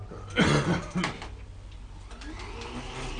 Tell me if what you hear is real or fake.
real